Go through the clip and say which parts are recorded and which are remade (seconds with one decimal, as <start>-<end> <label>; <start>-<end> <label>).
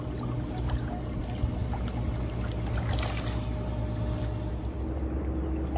0.0-5.8 recorded